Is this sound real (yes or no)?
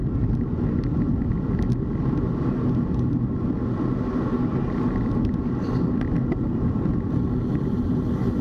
yes